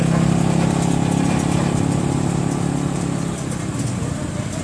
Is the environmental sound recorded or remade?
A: recorded